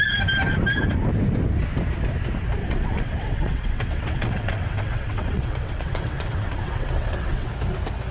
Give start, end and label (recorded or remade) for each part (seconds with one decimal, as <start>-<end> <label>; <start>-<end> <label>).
0.0-2.6 recorded; 2.6-7.5 remade; 7.5-8.1 recorded